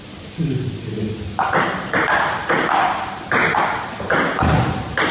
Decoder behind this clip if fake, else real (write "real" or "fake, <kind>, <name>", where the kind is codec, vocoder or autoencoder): real